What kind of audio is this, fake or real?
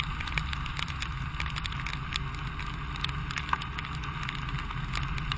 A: real